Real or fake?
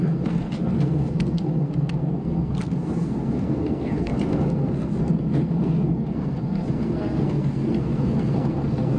fake